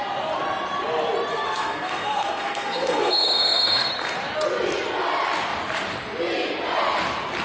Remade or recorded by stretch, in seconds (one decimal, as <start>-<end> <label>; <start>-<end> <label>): 0.0-1.3 recorded; 1.3-3.9 remade; 3.9-7.4 recorded